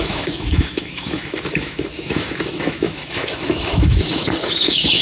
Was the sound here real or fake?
fake